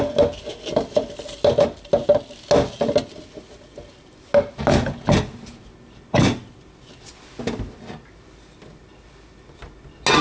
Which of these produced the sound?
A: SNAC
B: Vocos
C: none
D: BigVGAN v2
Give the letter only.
C